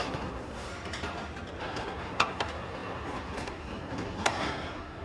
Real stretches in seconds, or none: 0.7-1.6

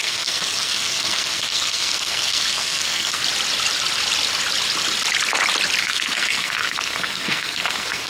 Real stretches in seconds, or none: 3.2-5.8

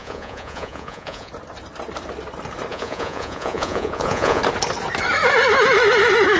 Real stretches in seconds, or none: 1.3-2.7; 4.4-6.4

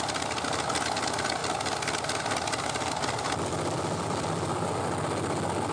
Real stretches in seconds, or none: 0.0-1.4; 4.8-5.7

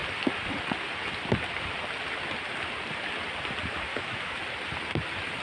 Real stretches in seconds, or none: 0.0-3.9; 4.4-5.4